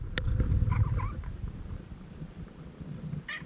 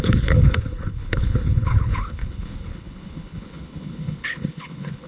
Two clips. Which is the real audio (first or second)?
first